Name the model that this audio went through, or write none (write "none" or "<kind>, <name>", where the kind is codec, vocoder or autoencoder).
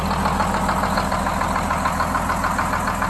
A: none